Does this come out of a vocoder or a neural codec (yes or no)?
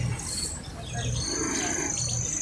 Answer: no